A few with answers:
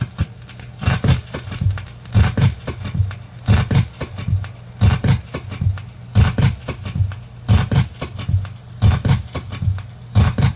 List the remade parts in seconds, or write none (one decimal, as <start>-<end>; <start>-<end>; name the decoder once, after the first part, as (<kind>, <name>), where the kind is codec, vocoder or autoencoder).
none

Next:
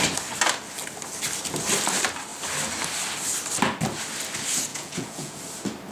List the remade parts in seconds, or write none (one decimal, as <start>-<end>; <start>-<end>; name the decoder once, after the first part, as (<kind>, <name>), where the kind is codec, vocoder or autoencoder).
4.7-5.4 (vocoder, Vocos)

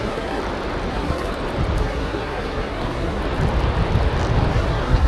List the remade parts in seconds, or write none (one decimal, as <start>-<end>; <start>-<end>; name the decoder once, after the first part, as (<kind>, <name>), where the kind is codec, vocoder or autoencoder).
0.0-0.4 (codec, SNAC); 0.9-1.3; 1.8-3.2; 4.5-5.1

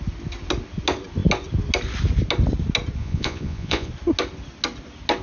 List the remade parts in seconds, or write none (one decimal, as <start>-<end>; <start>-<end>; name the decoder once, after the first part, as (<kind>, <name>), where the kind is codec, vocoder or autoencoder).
3.0-3.9 (vocoder, Vocos)

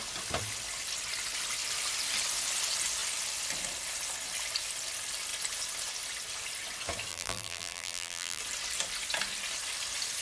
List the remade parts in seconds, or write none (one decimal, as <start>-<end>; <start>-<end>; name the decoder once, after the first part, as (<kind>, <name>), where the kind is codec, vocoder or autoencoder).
7.1-8.4 (vocoder, BigVGAN v2)

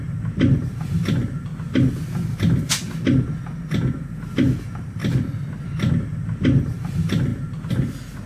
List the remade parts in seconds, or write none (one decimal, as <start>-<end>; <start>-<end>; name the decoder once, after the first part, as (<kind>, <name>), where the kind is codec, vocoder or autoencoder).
0.0-1.5 (vocoder, BigVGAN v2); 4.6-5.0; 5.9-7.3

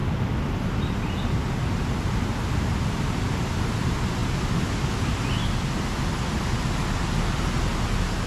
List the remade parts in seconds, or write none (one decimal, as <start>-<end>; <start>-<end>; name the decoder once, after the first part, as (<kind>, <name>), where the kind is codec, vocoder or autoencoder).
none

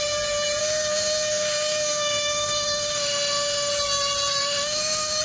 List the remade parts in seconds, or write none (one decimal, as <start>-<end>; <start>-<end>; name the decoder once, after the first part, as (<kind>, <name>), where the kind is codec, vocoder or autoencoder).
0.6-3.7 (autoencoder, DAC-VAE); 4.4-5.2